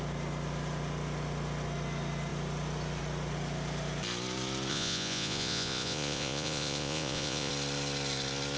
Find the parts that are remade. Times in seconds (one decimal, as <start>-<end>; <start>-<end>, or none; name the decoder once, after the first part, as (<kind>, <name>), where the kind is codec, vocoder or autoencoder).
4.7-7.5 (vocoder, Vocos)